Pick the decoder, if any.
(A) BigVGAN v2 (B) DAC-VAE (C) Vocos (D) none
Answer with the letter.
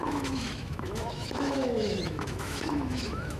B